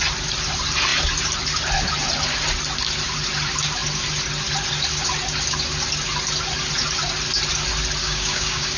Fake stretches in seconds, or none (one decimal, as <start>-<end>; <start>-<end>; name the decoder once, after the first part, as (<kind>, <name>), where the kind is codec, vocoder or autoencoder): 8.0-8.8 (codec, DAC)